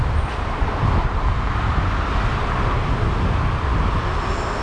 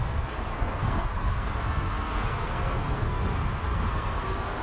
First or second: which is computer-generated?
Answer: second